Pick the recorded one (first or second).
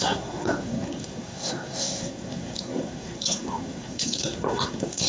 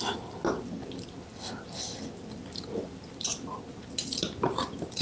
second